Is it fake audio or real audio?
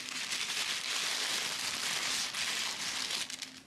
real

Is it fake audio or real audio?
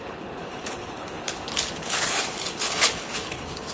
fake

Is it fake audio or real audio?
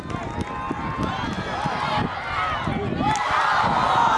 real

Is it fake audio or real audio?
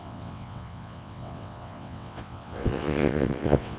fake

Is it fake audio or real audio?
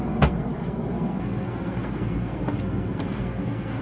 fake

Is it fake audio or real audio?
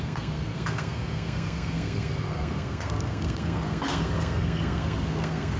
fake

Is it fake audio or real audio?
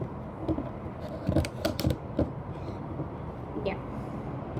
real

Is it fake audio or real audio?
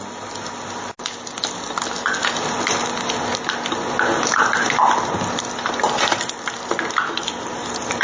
real